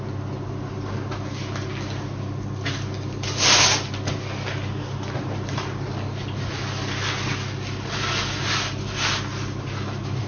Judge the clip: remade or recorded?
recorded